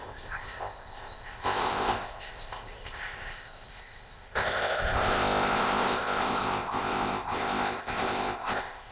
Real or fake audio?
fake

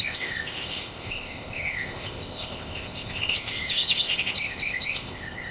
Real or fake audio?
fake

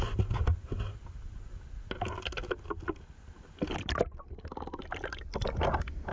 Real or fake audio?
real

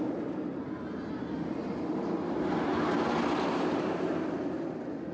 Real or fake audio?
real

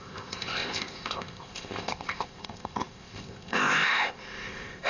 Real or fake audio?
fake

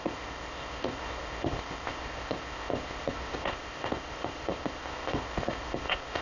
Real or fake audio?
fake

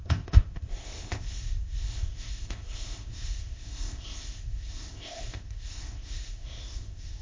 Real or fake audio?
fake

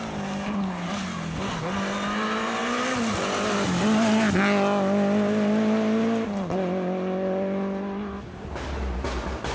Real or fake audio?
real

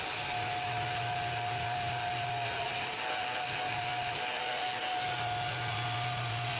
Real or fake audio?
real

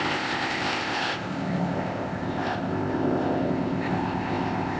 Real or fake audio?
fake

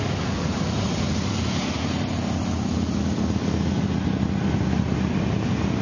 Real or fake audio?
real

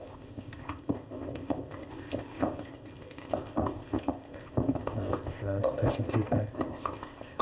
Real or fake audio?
fake